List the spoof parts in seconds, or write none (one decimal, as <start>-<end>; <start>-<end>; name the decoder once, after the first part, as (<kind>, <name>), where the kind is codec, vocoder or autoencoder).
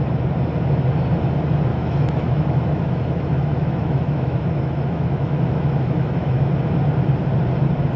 1.7-6.5 (autoencoder, DAC-VAE)